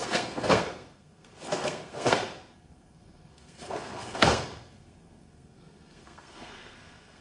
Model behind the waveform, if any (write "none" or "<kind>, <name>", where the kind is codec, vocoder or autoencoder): codec, SNAC